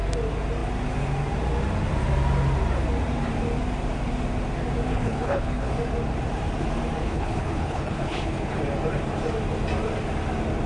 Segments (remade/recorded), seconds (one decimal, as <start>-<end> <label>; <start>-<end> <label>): 0.0-4.9 recorded; 4.9-5.7 remade; 5.7-7.0 recorded; 7.0-8.6 remade; 8.6-10.7 recorded